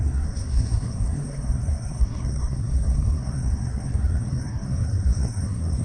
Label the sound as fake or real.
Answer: fake